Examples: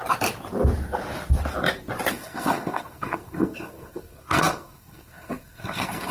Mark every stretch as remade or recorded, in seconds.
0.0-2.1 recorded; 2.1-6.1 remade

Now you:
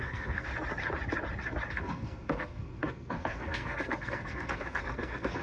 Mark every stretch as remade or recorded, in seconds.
0.0-0.5 remade; 0.5-1.7 recorded; 1.7-5.4 remade

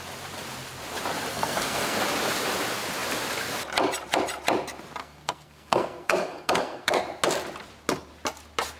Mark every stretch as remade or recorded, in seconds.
0.0-1.3 recorded; 1.3-2.0 remade; 2.0-5.0 recorded; 5.0-7.0 remade; 7.0-8.8 recorded

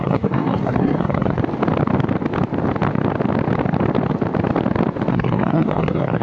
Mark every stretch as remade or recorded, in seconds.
0.0-1.4 remade; 1.4-5.1 recorded; 5.1-6.2 remade

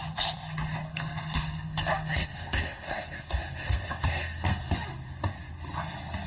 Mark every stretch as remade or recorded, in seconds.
0.0-0.9 recorded; 0.9-4.7 remade; 4.7-6.3 recorded

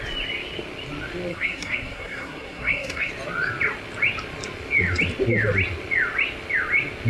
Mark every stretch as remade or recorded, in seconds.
0.0-1.3 recorded; 1.3-3.1 remade; 3.1-7.1 recorded

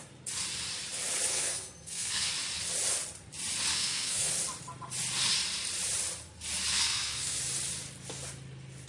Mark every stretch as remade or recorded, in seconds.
0.0-1.3 recorded; 1.3-2.3 remade; 2.3-3.7 recorded; 3.7-4.3 remade; 4.3-6.7 recorded; 6.7-7.4 remade; 7.4-8.9 recorded

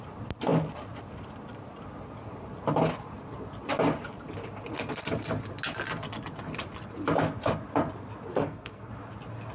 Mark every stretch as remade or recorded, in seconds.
0.0-8.3 recorded; 8.3-8.9 remade; 8.9-9.5 recorded